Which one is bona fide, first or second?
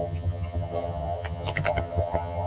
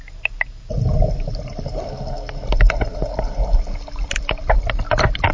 second